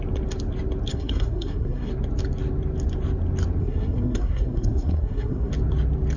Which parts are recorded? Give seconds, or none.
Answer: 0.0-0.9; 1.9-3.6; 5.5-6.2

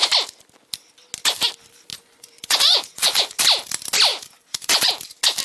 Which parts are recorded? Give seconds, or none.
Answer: 0.0-1.9; 3.4-4.1; 4.9-5.4